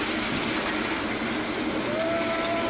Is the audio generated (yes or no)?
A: no